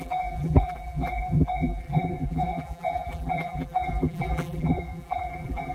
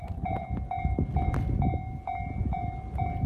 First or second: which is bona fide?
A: second